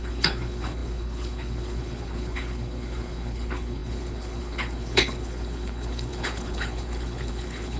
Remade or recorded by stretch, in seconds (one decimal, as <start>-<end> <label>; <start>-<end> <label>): 0.0-7.8 remade